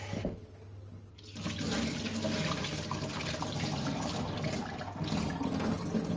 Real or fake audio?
real